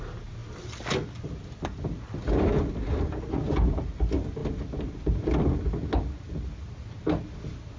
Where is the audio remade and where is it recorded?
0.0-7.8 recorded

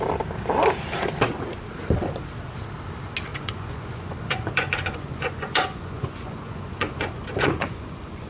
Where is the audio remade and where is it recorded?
0.0-3.3 recorded; 3.3-8.3 remade

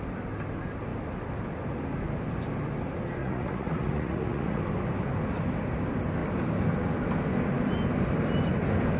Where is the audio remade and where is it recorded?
0.0-3.2 recorded; 3.2-4.6 remade; 4.6-9.0 recorded

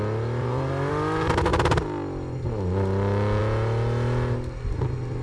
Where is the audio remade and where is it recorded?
0.0-0.4 recorded; 0.4-0.9 remade; 0.9-5.2 recorded

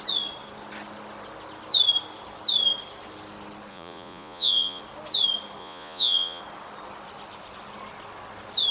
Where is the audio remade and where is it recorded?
0.0-3.7 recorded; 3.7-4.8 remade; 4.8-5.6 recorded; 5.6-6.4 remade; 6.4-8.7 recorded

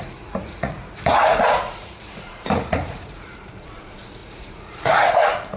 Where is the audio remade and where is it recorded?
0.0-5.6 remade